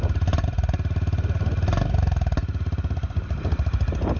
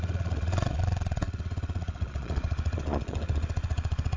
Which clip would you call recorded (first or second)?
first